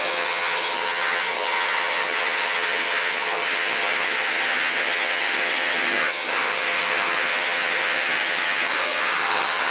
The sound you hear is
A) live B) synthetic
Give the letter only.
B